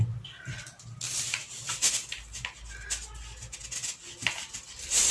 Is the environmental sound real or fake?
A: real